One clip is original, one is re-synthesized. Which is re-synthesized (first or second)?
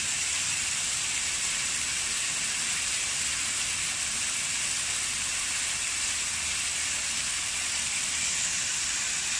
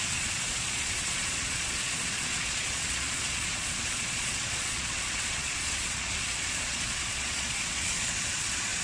second